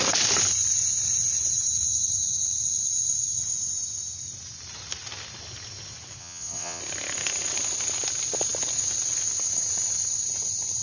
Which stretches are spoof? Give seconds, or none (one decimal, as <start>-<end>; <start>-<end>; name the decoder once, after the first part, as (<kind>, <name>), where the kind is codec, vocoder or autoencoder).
6.2-6.8 (vocoder, WaveNeXt)